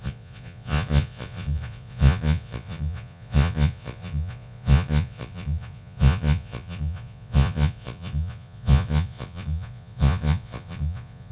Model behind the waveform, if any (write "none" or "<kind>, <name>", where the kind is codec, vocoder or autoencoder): vocoder, Vocos